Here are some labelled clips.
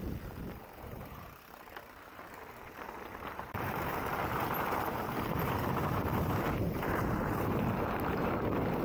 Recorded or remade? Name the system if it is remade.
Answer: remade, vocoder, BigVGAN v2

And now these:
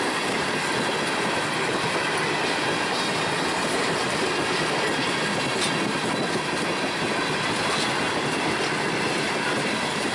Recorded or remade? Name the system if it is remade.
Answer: recorded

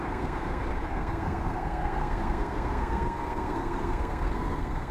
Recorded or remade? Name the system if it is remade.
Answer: remade, codec, SNAC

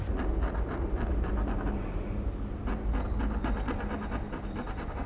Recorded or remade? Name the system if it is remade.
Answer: recorded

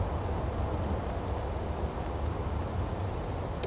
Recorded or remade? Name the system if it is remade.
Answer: recorded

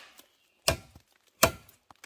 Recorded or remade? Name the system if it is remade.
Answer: recorded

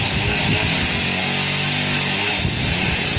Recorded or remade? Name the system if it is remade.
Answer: recorded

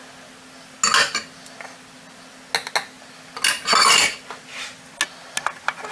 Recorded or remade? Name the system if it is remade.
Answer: recorded